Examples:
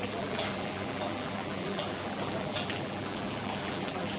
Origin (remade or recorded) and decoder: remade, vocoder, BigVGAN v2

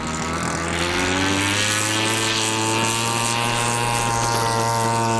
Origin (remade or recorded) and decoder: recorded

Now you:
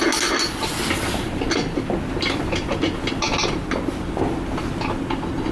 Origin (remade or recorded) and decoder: recorded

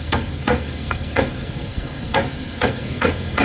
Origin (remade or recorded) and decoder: remade, codec, SNAC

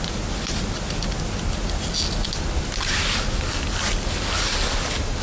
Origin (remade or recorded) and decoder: recorded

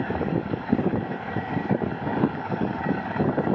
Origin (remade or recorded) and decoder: remade, codec, DAC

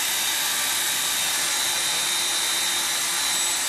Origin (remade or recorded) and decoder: recorded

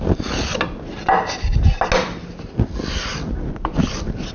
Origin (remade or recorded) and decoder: recorded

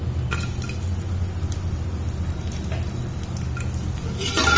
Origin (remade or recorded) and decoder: recorded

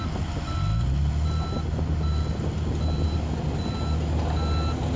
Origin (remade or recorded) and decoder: recorded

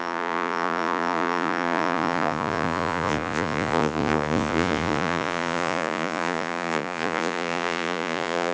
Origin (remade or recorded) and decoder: remade, vocoder, Vocos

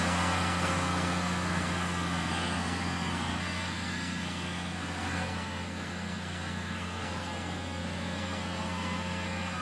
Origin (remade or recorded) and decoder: remade, codec, SNAC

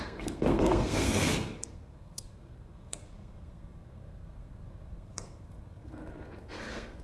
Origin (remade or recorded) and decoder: remade, codec, SNAC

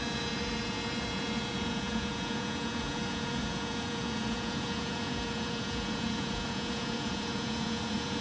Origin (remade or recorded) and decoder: remade, vocoder, Vocos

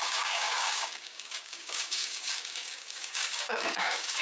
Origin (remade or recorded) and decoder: remade, codec, DAC